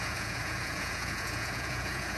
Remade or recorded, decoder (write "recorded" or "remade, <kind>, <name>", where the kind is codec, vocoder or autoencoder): remade, vocoder, Vocos